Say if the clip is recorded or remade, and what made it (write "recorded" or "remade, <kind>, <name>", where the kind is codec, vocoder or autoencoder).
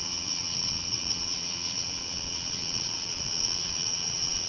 remade, vocoder, Vocos